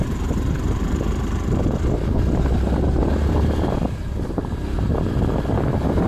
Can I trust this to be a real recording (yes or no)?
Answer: yes